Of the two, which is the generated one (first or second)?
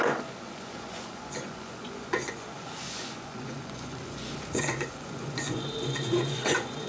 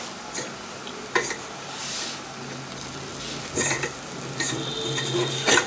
first